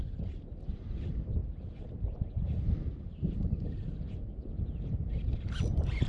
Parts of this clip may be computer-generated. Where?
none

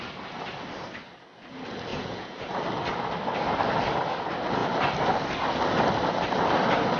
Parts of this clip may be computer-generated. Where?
1.9-2.5

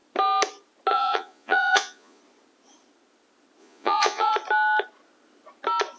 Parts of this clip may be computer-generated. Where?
0.9-2.2; 3.6-4.3